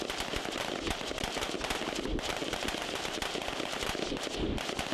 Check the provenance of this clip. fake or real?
real